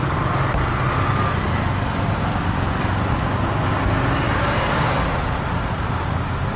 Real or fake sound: real